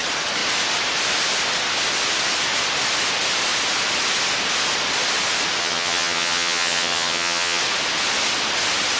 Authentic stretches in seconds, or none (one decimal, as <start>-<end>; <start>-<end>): 0.0-5.6; 7.6-9.0